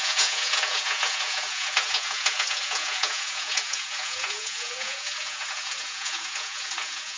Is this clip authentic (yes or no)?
no